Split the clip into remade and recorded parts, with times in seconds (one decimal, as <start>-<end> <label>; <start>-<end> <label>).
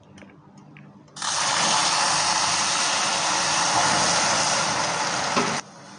0.0-6.0 recorded